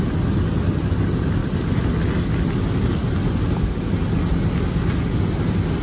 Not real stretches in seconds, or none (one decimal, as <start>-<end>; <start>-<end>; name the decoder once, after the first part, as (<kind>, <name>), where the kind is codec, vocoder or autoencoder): none